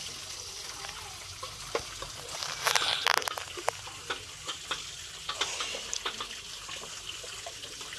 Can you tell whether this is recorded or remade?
recorded